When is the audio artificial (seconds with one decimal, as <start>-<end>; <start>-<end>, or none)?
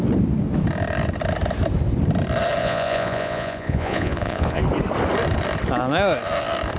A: 2.6-4.6